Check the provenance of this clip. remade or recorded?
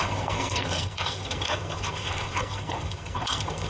remade